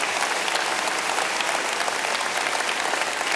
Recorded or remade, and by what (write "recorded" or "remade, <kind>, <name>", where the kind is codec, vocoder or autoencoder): recorded